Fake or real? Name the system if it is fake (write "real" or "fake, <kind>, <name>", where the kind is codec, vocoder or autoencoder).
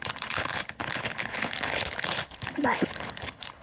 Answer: fake, codec, HILCodec